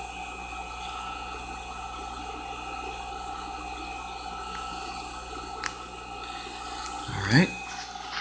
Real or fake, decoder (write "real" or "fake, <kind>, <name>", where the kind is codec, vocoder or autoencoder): real